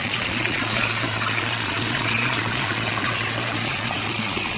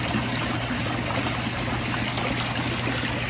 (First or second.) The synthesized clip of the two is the first